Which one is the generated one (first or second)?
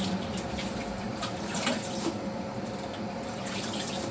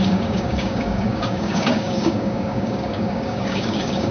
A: second